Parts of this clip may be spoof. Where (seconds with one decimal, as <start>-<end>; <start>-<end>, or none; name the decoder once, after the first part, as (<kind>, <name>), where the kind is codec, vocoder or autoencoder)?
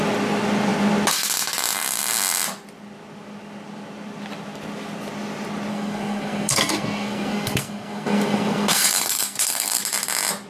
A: 5.7-9.8 (codec, SNAC)